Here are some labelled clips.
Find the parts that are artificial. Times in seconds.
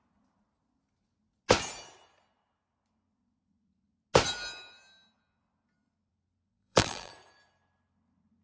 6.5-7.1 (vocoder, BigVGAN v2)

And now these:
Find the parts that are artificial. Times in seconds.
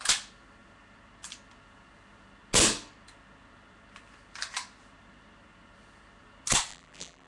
6.7-7.3 (vocoder, BigVGAN v2)